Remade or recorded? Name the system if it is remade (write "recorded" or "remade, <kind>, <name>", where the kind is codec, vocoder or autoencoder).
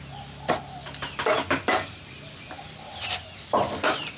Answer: recorded